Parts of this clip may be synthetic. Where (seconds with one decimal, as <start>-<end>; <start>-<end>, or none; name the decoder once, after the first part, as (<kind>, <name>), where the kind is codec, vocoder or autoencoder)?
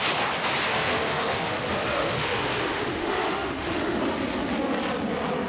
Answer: 0.7-4.0 (autoencoder, DAC-VAE)